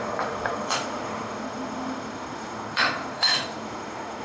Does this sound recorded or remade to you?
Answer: remade